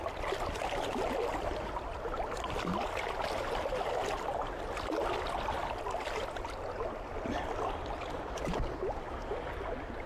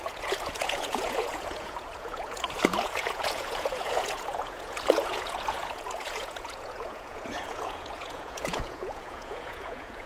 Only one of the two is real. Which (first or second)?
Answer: first